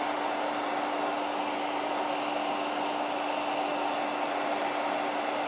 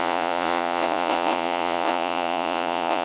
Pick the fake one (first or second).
second